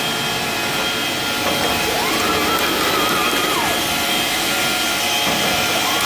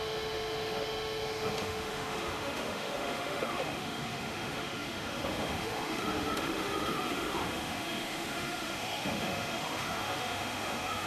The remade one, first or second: second